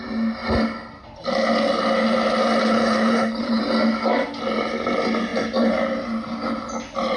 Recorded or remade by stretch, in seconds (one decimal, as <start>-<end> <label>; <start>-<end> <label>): 0.0-2.6 recorded; 2.6-3.6 remade; 3.6-7.2 recorded